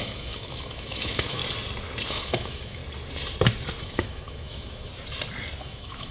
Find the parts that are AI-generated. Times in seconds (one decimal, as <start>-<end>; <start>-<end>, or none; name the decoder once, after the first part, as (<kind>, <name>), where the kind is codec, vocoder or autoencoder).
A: 0.0-1.4 (autoencoder, DAC-VAE); 2.1-2.8; 3.8-4.9; 5.6-6.1